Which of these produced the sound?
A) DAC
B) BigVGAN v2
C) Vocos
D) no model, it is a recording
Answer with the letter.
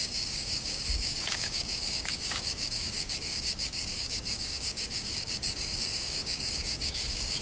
A